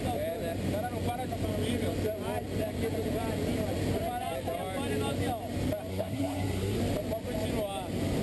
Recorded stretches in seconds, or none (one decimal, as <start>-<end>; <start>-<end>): 0.0-5.9; 6.8-8.2